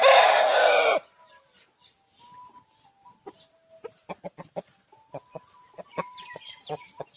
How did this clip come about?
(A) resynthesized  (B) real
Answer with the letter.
B